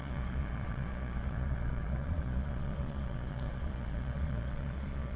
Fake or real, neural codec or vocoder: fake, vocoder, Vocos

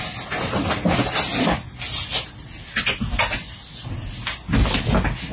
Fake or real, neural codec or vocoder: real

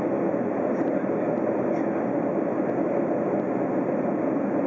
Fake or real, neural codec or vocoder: real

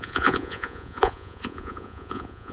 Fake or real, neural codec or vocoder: fake, vocoder, Vocos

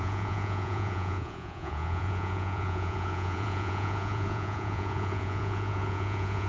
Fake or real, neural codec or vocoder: fake, vocoder, Vocos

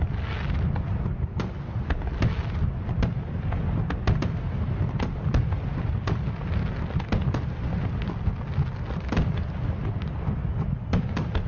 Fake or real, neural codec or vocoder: real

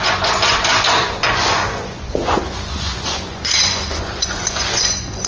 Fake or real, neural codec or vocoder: fake, vocoder, Vocos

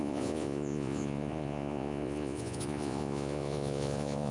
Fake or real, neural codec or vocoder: fake, vocoder, Vocos